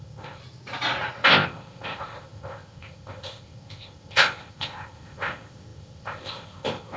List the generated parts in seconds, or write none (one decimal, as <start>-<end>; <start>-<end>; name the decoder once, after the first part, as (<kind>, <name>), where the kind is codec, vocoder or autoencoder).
0.0-0.4 (codec, ZipCodec); 1.3-7.0